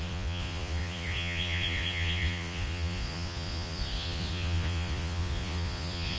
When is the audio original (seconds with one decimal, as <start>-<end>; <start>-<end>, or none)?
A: none